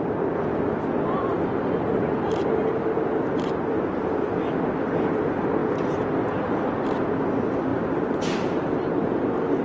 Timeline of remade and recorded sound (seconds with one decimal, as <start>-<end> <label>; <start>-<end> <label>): 0.0-7.7 recorded; 7.7-8.7 remade; 8.7-9.6 recorded